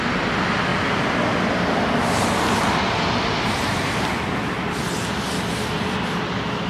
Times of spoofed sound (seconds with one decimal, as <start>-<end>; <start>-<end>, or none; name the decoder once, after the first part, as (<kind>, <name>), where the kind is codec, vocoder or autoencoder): none